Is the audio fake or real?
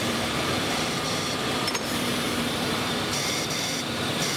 fake